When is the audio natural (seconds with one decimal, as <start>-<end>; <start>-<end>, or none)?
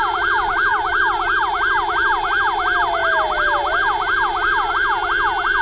0.0-5.6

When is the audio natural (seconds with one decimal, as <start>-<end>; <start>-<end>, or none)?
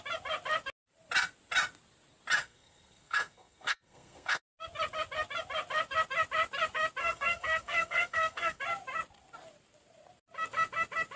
0.0-2.4; 4.4-7.0; 8.6-11.2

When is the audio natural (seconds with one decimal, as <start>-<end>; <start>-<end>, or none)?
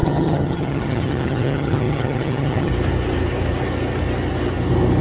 2.7-5.0